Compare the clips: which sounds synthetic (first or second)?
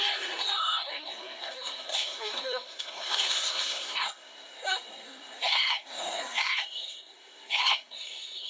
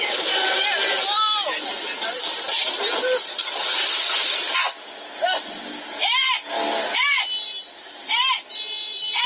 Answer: first